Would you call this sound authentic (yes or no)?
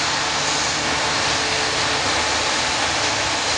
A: yes